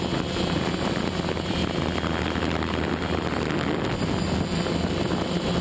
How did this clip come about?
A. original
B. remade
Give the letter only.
A